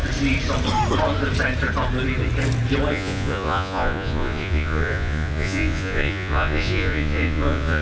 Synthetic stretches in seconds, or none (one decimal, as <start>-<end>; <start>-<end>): 2.9-7.8